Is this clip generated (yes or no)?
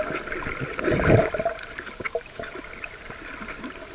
no